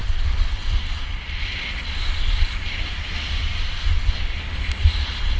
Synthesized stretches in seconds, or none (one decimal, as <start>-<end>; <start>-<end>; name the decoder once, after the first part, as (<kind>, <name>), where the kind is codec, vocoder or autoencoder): none